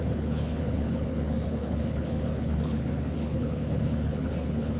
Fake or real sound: fake